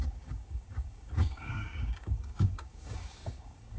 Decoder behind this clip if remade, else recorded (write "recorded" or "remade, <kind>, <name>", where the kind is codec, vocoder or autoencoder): remade, codec, DAC